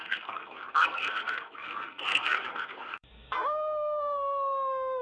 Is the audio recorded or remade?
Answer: remade